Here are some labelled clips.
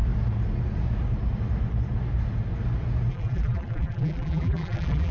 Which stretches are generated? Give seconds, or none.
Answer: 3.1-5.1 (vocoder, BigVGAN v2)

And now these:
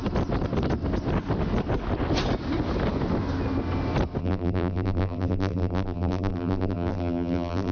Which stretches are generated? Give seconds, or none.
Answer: 4.2-7.7 (vocoder, BigVGAN v2)

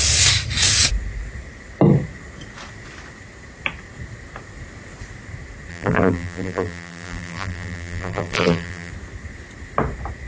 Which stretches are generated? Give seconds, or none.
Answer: 5.7-8.9 (vocoder, BigVGAN v2)

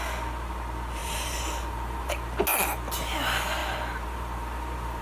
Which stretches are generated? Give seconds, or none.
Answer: 1.0-2.1 (vocoder, BigVGAN v2); 3.6-5.0

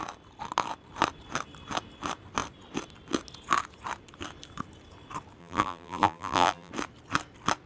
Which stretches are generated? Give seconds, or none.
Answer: 5.4-6.7 (vocoder, BigVGAN v2)

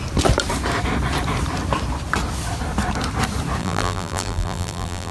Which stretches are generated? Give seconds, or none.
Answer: 3.6-5.1 (vocoder, BigVGAN v2)

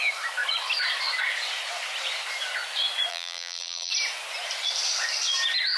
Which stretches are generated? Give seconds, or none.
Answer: 3.1-3.9 (vocoder, BigVGAN v2)